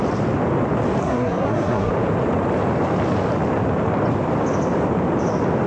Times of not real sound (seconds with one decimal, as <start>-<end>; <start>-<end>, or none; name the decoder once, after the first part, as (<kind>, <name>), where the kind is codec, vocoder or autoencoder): 1.0-1.9 (codec, SNAC)